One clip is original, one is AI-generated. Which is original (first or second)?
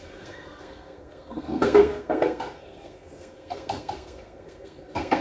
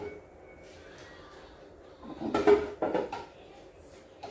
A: second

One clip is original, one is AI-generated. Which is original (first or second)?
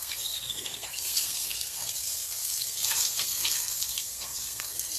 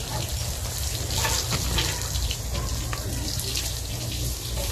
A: second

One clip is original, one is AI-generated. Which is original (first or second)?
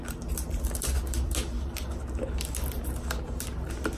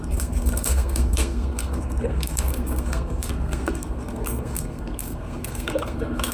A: first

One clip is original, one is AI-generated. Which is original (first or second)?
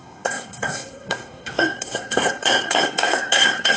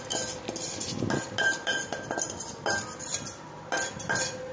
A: second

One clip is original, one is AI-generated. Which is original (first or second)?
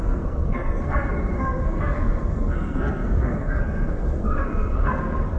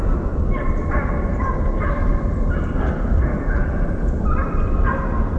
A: second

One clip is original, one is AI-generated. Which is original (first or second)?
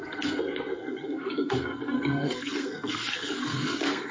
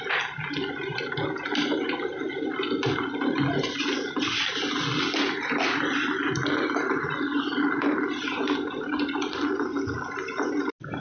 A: second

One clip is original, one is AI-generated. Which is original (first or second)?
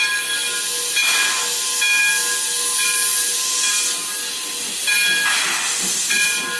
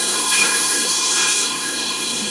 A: first